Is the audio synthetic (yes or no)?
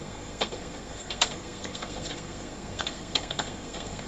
yes